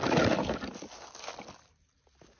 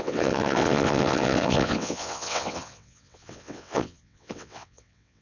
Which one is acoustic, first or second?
first